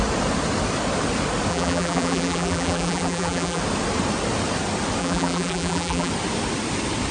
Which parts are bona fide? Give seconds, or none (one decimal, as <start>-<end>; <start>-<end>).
0.0-1.5; 3.6-5.0; 6.1-7.1